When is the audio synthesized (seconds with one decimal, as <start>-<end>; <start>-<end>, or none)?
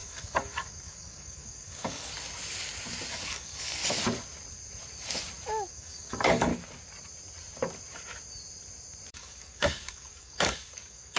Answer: 0.0-2.1; 3.1-3.8; 5.7-6.5; 9.1-11.2